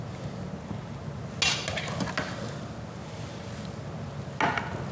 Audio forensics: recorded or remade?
recorded